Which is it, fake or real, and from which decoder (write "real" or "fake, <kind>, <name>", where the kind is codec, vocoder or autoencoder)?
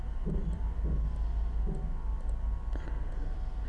real